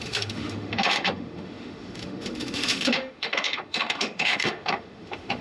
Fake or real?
fake